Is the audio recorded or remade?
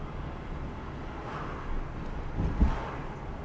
recorded